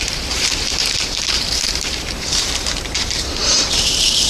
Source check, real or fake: fake